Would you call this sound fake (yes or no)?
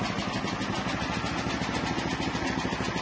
no